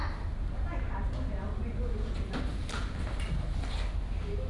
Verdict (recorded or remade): recorded